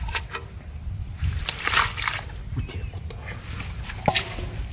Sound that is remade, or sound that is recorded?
recorded